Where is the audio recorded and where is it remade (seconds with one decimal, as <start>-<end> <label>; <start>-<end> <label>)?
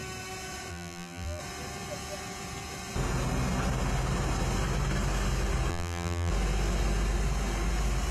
0.0-0.7 recorded; 0.7-1.4 remade; 1.4-5.7 recorded; 5.7-6.3 remade; 6.3-8.1 recorded